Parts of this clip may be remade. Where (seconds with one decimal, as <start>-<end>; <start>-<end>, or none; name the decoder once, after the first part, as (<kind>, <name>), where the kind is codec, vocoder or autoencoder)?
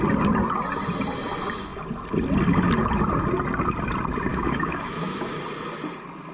4.3-5.4 (autoencoder, DAC-VAE)